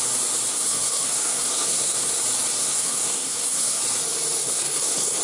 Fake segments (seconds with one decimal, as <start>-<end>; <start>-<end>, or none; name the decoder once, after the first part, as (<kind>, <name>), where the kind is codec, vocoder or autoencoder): 0.5-2.2 (codec, SNAC); 2.6-3.8; 4.4-5.2

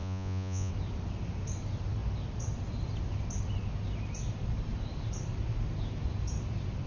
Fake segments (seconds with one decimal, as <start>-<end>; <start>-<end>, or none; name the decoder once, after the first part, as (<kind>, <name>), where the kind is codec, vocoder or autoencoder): 0.0-0.7 (vocoder, Vocos)

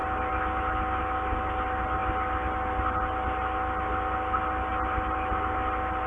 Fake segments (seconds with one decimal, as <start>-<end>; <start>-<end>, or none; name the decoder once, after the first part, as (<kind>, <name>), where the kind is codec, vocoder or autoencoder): none